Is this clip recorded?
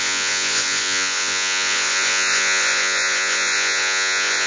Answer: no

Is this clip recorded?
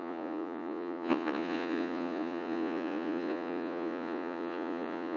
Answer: no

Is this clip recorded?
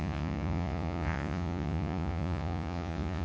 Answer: no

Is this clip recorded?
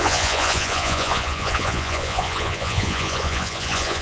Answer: no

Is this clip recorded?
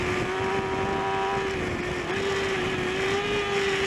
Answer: yes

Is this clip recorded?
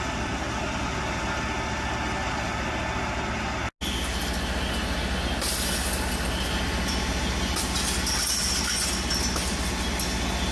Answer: yes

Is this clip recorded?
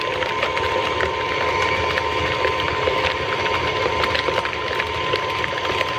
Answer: yes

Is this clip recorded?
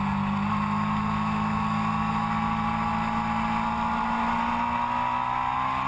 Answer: yes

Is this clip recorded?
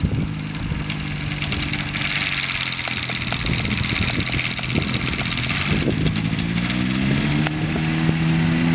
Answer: yes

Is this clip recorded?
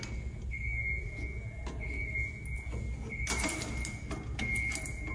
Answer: yes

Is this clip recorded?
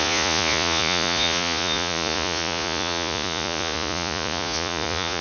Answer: no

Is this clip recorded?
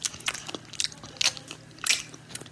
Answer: yes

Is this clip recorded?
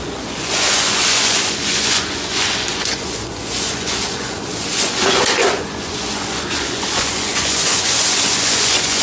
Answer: no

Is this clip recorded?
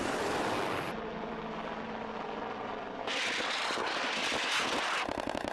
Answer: yes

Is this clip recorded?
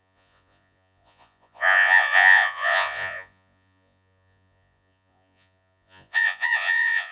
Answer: no